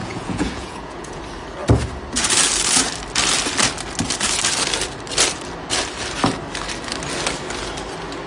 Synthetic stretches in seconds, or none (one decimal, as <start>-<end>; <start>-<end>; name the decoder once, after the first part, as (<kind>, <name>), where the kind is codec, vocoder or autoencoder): 0.0-1.2 (vocoder, Vocos)